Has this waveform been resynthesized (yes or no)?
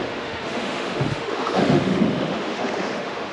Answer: yes